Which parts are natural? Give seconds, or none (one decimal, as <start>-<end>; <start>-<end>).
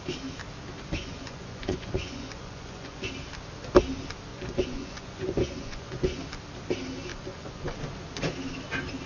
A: 0.0-1.0; 3.1-4.3; 6.2-7.1; 7.7-9.1